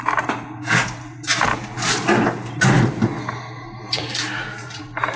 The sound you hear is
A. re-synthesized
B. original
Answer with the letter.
B